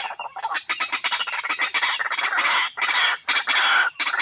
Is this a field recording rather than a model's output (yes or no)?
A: yes